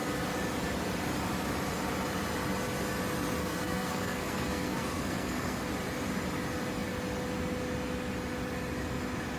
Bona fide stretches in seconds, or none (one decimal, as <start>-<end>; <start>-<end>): 0.0-3.4; 5.7-9.4